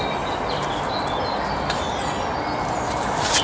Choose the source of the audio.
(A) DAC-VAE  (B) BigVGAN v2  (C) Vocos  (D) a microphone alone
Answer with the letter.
D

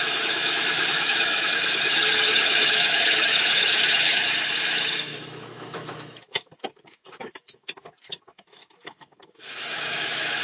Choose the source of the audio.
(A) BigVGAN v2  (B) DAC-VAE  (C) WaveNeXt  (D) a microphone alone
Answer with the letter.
B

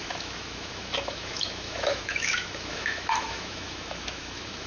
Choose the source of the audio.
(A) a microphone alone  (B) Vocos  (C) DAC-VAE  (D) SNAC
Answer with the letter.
C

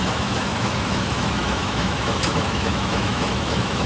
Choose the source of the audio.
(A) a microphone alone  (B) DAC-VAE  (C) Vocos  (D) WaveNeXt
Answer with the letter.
B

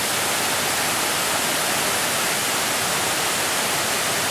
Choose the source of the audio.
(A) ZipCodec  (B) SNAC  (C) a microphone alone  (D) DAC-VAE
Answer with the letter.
C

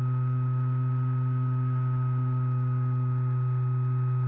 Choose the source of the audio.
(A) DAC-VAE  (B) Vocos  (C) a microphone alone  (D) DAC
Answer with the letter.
C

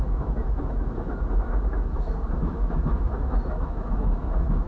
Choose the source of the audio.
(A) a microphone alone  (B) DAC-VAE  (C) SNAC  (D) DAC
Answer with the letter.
B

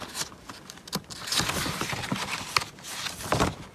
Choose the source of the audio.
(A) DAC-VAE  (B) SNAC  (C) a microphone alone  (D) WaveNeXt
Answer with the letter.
C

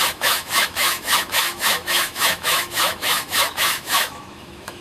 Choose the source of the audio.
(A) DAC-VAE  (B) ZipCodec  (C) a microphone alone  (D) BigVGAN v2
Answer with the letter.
A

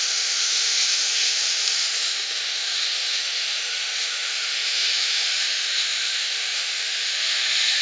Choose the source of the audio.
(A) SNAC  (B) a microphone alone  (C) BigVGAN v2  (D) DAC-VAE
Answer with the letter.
D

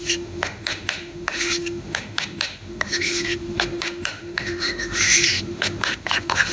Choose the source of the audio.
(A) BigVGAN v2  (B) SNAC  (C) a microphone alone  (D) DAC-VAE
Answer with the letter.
D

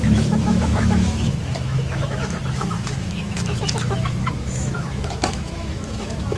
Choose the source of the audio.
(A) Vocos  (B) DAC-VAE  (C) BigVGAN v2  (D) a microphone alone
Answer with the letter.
B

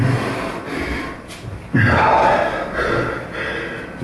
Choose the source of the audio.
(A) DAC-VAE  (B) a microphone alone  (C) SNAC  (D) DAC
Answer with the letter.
B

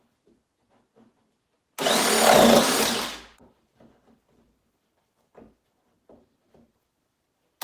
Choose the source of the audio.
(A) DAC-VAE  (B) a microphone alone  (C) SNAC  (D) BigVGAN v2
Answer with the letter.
B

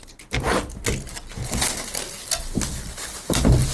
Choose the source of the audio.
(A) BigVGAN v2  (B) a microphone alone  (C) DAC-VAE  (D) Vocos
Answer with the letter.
B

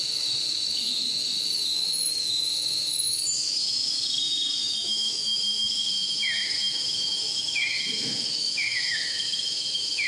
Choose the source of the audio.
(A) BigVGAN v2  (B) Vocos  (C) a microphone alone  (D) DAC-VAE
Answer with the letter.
D